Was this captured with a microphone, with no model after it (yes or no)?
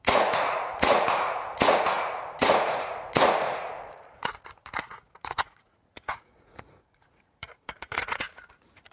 no